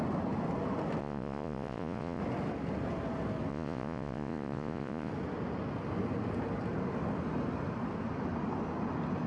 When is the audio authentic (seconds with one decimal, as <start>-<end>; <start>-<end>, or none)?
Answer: 0.0-1.0; 2.2-3.5; 5.1-9.3